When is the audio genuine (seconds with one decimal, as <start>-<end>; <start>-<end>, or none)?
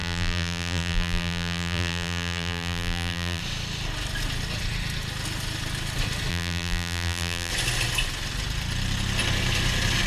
3.4-6.3; 7.5-10.1